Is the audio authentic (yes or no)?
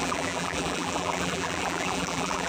no